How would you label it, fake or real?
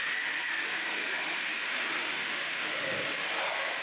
fake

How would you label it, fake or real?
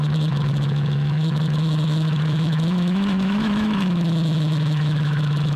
fake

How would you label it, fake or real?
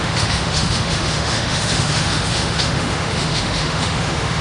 fake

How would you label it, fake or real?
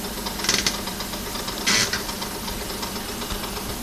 real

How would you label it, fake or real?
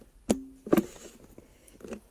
real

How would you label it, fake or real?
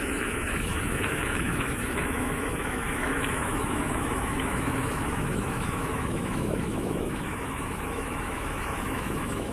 fake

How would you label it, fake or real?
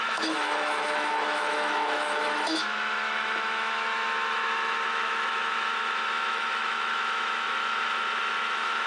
fake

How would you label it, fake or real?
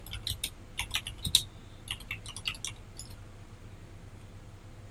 real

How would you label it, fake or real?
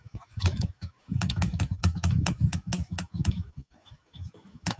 fake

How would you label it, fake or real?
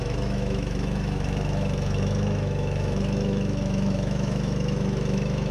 fake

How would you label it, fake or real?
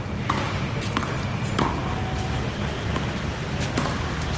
real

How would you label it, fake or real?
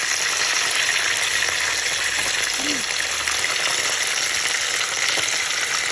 real